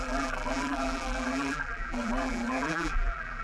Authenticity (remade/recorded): remade